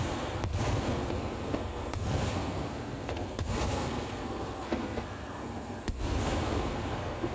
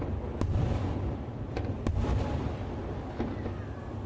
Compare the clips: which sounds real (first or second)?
second